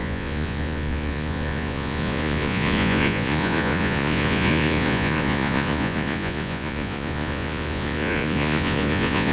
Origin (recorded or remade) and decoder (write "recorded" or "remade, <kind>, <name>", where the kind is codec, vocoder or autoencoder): remade, vocoder, Vocos